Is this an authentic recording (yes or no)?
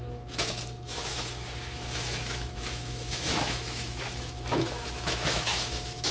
no